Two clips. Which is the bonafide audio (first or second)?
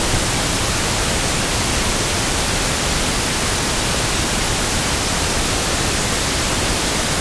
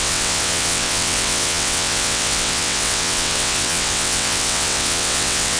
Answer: first